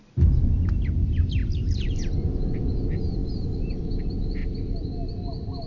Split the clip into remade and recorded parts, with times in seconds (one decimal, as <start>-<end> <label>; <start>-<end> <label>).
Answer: 0.0-1.4 recorded; 1.4-2.1 remade; 2.1-5.7 recorded